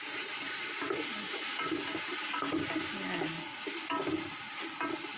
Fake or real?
real